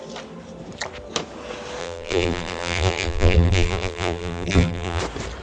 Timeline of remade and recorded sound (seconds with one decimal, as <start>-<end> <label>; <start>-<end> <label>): 0.0-1.8 recorded; 1.8-5.0 remade; 5.0-5.4 recorded